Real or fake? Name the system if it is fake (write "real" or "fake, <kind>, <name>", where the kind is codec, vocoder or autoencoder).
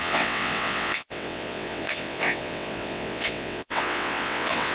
fake, vocoder, WaveNeXt